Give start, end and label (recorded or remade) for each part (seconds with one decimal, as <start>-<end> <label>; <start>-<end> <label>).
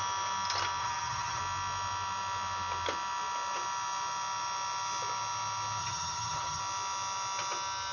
0.0-0.8 recorded; 0.8-1.4 remade; 1.4-5.8 recorded; 5.8-6.6 remade; 6.6-7.9 recorded